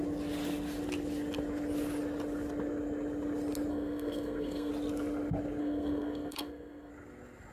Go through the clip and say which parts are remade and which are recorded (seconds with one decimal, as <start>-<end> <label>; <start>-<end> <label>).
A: 0.0-3.7 recorded; 3.7-4.7 remade; 4.7-5.6 recorded; 5.6-6.9 remade; 6.9-7.5 recorded